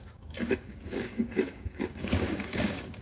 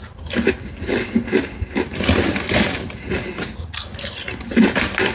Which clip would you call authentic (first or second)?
second